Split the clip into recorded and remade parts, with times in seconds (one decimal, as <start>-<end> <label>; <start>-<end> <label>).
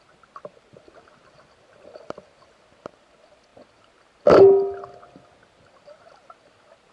0.0-6.9 recorded